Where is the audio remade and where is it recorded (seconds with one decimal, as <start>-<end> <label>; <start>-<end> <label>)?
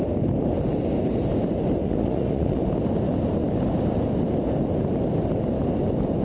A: 0.0-1.8 recorded; 1.8-2.6 remade; 2.6-6.2 recorded